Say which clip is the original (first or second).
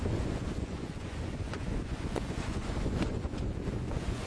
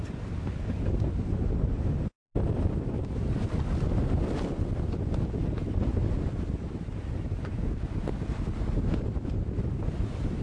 second